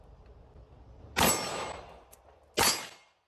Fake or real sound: real